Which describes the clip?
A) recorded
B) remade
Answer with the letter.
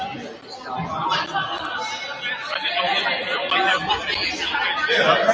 A